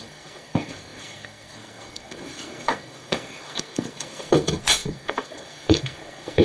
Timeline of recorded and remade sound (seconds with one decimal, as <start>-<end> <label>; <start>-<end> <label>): 0.0-6.4 remade